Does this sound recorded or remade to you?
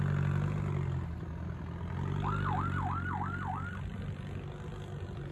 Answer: recorded